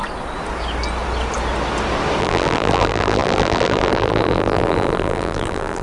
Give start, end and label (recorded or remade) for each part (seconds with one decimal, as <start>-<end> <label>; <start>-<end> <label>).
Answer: 0.0-2.2 recorded; 2.2-5.8 remade